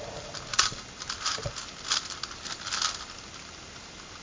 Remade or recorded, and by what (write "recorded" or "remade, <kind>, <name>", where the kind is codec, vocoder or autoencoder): recorded